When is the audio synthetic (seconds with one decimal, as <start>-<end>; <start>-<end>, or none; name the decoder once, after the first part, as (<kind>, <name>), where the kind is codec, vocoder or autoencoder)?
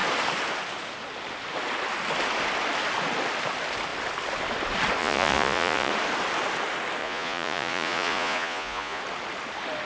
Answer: 5.0-5.9 (vocoder, Vocos); 7.0-9.0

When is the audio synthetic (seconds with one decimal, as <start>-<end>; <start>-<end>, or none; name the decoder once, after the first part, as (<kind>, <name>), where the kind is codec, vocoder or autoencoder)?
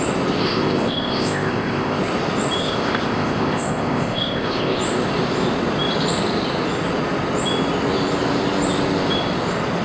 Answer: 0.4-2.0 (codec, ZipCodec); 2.6-4.8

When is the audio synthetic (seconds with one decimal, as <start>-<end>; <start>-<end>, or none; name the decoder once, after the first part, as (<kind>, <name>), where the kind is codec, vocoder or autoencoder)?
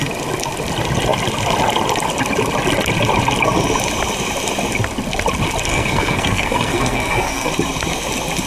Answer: 5.7-7.5 (codec, SNAC)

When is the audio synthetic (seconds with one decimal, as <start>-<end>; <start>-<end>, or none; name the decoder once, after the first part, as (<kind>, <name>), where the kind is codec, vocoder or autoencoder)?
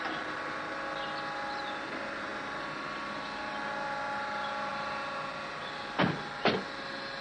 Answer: none